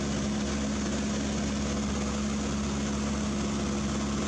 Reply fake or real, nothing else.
real